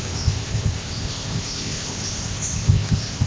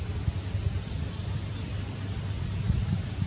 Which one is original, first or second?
second